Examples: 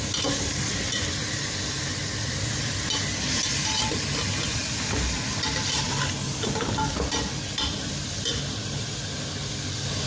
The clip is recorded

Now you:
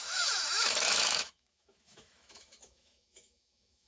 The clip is remade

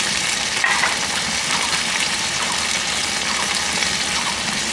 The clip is recorded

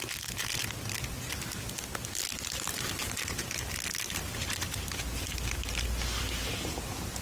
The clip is recorded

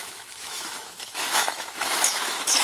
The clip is remade